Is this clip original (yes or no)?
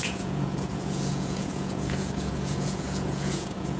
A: no